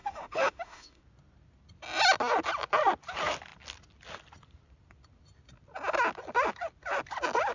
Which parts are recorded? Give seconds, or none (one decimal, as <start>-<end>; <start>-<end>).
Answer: 1.0-7.5